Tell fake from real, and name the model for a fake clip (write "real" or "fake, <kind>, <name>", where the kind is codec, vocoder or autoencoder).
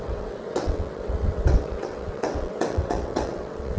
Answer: fake, vocoder, WaveNeXt